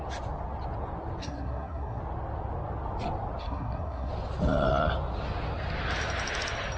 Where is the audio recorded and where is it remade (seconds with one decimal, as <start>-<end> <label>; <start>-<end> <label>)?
0.0-1.2 recorded; 1.2-2.0 remade; 2.0-3.4 recorded; 3.4-4.1 remade; 4.1-6.8 recorded